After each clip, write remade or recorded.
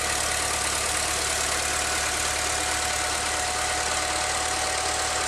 recorded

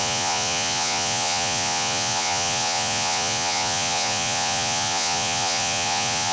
remade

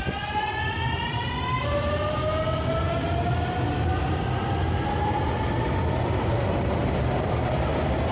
recorded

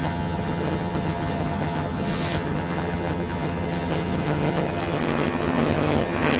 remade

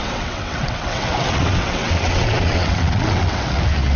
remade